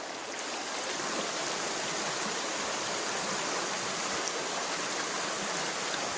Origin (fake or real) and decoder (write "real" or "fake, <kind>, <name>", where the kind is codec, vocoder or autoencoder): real